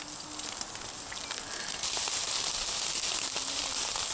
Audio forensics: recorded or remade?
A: recorded